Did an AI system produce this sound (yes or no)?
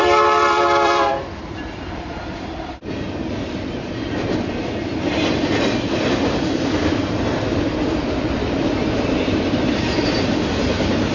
yes